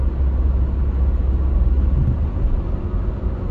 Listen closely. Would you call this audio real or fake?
real